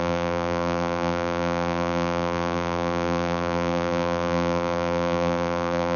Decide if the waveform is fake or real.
fake